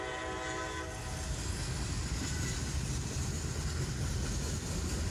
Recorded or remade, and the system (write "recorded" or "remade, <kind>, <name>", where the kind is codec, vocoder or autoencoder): recorded